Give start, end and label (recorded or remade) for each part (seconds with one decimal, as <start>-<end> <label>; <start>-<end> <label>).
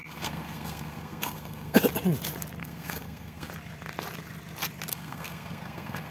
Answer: 0.0-1.8 remade; 1.8-2.6 recorded; 2.6-3.5 remade; 3.5-4.9 recorded; 4.9-6.1 remade